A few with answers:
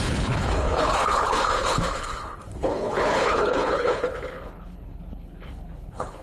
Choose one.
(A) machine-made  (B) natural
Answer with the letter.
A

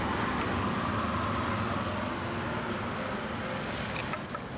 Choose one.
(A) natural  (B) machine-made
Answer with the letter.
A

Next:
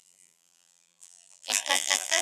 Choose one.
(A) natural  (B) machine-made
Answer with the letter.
B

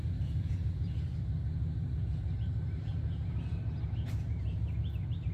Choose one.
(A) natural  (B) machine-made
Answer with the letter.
B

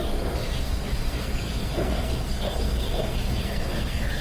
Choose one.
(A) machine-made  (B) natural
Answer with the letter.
A